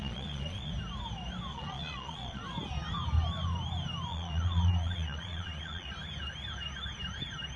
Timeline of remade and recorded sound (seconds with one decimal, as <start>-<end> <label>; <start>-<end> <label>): 0.0-0.7 remade; 0.7-1.5 recorded; 1.5-2.4 remade; 2.4-4.1 recorded; 4.1-5.9 remade; 5.9-7.6 recorded